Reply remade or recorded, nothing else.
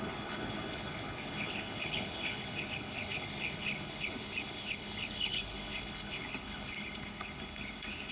remade